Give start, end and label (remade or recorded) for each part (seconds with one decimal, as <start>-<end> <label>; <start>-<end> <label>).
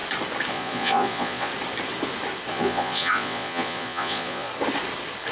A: 0.0-0.5 recorded; 0.5-1.5 remade; 1.5-2.5 recorded; 2.5-4.5 remade; 4.5-5.3 recorded